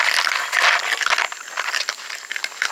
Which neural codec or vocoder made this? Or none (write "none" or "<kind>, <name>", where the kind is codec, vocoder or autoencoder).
none